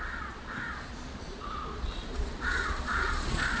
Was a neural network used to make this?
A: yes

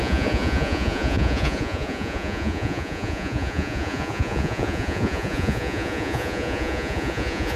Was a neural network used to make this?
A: yes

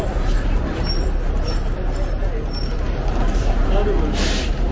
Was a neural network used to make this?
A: no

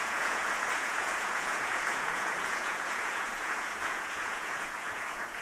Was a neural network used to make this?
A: yes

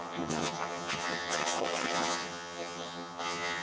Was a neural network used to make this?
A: yes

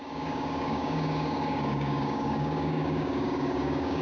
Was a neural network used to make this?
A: yes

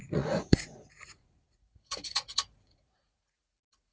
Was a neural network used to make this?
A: yes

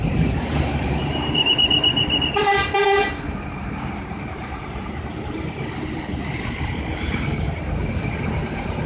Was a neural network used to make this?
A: yes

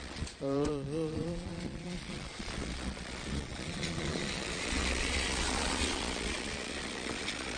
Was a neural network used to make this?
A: yes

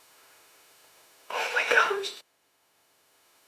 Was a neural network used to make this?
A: yes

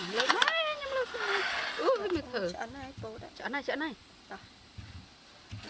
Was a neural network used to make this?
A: no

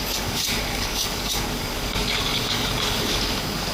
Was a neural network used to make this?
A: yes